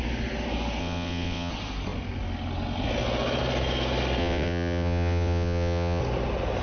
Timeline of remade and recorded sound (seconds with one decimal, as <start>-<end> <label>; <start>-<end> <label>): 0.0-0.8 recorded; 0.8-1.5 remade; 1.5-4.2 recorded; 4.2-6.0 remade; 6.0-6.6 recorded